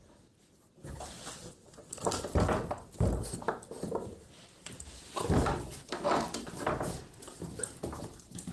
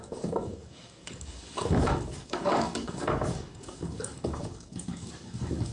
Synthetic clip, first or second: second